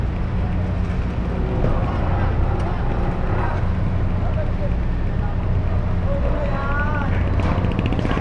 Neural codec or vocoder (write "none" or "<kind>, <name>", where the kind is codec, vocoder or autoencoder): none